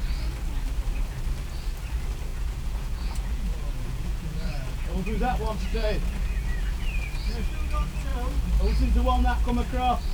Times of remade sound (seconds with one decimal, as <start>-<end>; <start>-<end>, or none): 2.3-5.2; 5.7-6.8

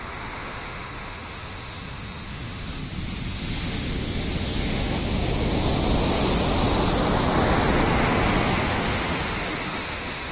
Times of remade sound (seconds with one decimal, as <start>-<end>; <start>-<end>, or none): 0.0-2.8; 3.3-5.0; 8.6-10.3

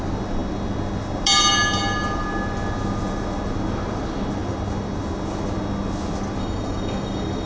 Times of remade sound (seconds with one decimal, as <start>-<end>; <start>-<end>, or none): 6.4-7.5